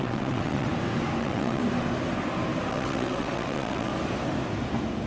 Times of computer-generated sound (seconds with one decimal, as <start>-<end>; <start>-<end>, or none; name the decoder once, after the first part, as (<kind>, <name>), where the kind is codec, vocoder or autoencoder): 0.0-0.7 (vocoder, WaveNeXt); 1.2-1.6; 2.7-3.9